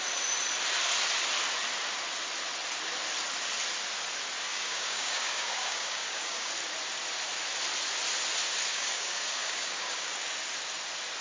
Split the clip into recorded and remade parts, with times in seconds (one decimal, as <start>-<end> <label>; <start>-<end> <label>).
0.0-4.5 recorded; 4.5-6.5 remade; 6.5-8.7 recorded; 8.7-10.1 remade; 10.1-11.2 recorded